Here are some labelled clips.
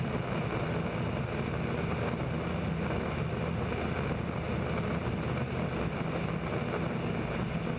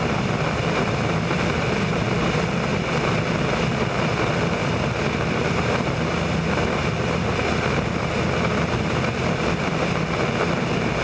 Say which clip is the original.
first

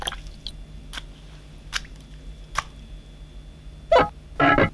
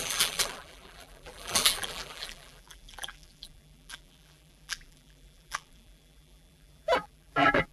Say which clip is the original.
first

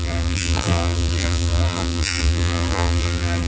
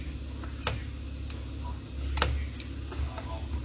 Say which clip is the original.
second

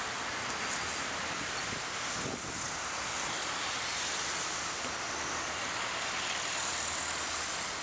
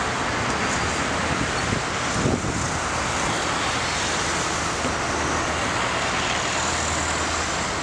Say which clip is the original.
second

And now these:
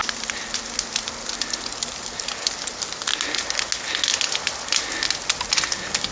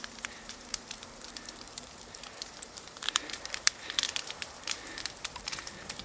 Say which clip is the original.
first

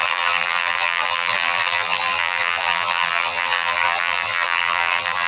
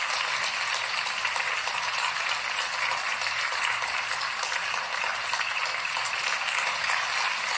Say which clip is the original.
second